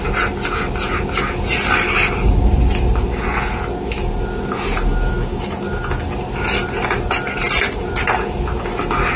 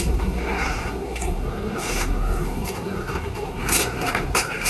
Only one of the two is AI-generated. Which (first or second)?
second